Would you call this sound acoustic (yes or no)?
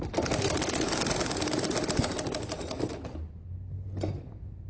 yes